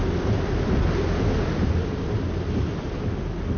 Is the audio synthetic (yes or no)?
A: no